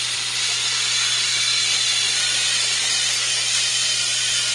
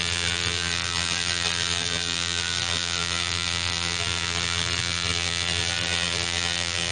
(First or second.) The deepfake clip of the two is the second